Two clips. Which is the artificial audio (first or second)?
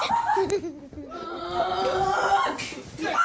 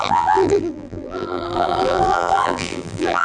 second